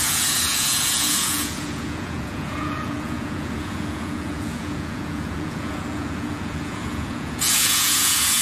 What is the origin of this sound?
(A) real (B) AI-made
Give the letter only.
B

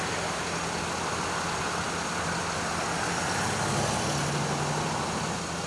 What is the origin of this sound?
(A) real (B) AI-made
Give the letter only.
A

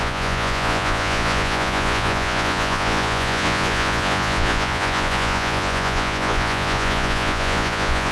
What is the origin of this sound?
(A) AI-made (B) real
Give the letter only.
A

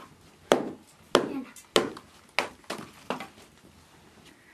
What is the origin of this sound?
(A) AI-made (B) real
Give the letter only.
B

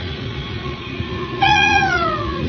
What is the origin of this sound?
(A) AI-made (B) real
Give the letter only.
A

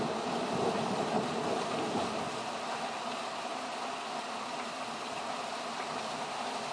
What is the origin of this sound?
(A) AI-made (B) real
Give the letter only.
B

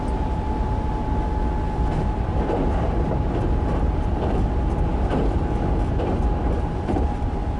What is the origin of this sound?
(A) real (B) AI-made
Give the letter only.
A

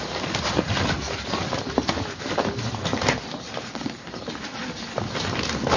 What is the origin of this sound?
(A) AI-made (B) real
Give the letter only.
B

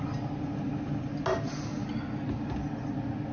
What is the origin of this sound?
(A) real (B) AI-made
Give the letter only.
A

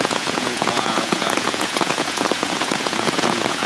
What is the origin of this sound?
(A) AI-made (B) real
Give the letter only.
A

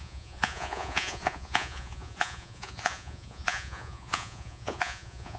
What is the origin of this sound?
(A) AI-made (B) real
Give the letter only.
A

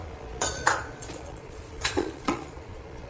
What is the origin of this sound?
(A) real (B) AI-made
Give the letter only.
B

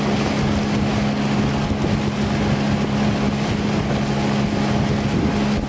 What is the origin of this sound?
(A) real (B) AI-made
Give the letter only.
A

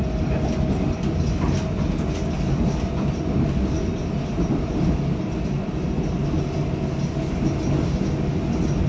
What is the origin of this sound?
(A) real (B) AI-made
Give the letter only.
A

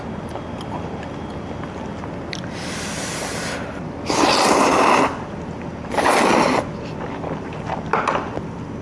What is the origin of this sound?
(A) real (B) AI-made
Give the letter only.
A